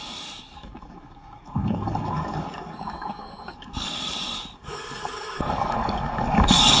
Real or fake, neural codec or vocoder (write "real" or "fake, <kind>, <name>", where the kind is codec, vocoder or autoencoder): fake, codec, DAC